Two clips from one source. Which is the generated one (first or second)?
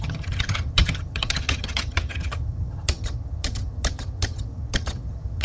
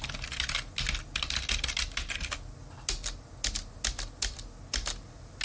first